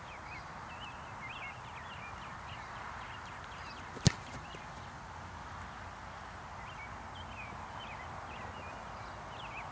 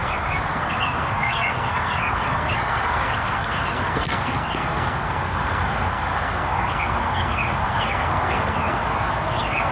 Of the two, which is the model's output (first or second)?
second